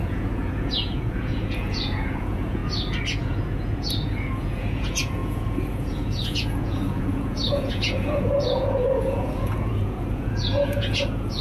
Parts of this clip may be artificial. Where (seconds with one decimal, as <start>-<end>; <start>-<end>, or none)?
0.0-2.6; 3.2-11.4